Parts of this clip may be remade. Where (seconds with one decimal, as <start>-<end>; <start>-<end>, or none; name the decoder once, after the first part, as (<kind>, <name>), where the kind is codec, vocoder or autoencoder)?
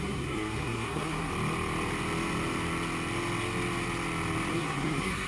0.0-1.3 (codec, SNAC); 4.5-5.3